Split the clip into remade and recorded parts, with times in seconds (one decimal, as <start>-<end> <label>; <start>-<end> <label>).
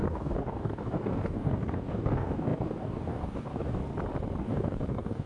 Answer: 0.0-3.8 remade; 3.8-4.4 recorded; 4.4-5.3 remade